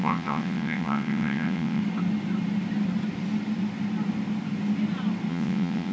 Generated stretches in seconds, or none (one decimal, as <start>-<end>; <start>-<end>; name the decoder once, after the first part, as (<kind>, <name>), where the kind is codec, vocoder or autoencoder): 0.0-1.8 (vocoder, WaveNeXt); 5.3-5.9